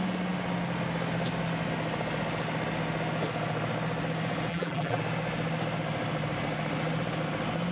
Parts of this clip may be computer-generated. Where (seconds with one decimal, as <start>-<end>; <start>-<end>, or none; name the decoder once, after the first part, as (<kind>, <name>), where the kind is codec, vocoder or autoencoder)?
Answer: 4.5-5.0 (vocoder, BigVGAN v2)